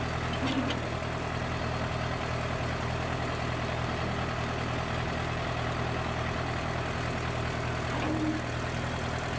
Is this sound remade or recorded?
recorded